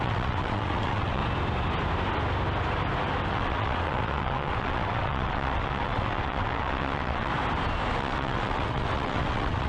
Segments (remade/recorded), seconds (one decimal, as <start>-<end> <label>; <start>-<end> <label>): 0.0-1.2 remade; 1.2-3.3 recorded; 3.3-7.3 remade; 7.3-7.9 recorded; 7.9-9.7 remade